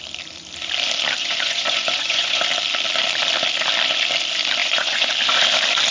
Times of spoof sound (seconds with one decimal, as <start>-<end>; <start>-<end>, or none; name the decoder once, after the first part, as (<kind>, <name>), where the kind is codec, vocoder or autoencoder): 1.2-2.4 (vocoder, Vocos); 4.6-5.1